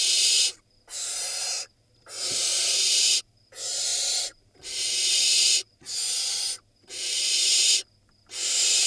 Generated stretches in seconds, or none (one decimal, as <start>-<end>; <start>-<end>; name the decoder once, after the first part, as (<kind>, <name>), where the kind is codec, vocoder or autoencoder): none